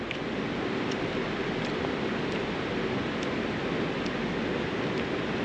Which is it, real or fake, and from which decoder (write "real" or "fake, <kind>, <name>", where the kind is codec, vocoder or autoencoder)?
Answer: real